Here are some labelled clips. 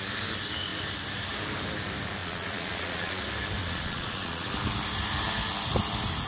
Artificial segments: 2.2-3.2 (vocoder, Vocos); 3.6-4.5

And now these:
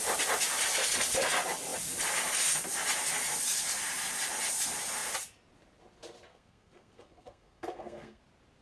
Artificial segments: 6.3-8.2 (codec, SNAC)

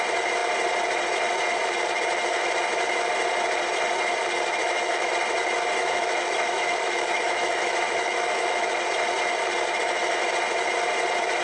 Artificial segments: 4.6-5.1 (autoencoder, DAC-VAE); 5.8-8.7

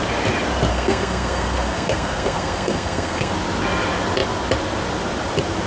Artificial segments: 0.7-3.3 (codec, SNAC)

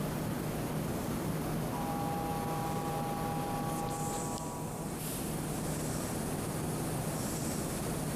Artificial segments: none

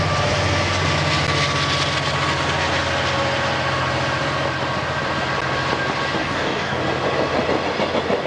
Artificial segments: 6.2-6.8 (codec, DAC)

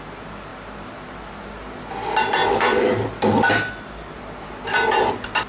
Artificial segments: none